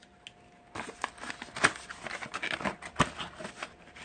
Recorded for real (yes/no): yes